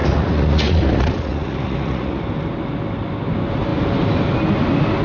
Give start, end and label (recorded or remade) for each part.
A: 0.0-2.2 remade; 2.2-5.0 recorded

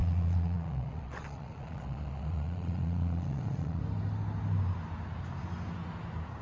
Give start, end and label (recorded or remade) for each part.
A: 0.0-3.8 remade; 3.8-6.4 recorded

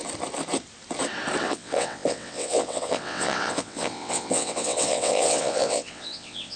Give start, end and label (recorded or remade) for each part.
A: 0.0-1.4 recorded; 1.4-6.6 remade

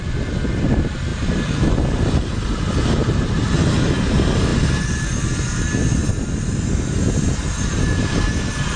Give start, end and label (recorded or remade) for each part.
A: 0.0-8.8 recorded

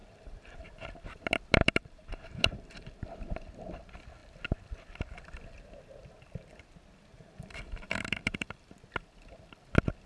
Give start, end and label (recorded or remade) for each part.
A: 0.0-1.2 remade; 1.2-1.6 recorded; 1.6-3.0 remade; 3.0-7.1 recorded; 7.1-8.7 remade; 8.7-10.1 recorded

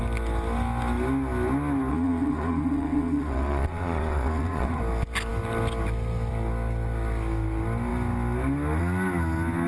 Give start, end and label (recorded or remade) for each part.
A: 0.0-1.9 recorded; 1.9-4.8 remade; 4.8-9.7 recorded